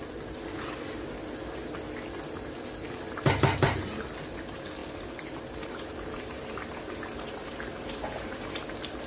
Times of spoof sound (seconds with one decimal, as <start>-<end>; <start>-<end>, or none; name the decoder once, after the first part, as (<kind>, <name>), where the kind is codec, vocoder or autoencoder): 4.8-8.5 (vocoder, BigVGAN v2)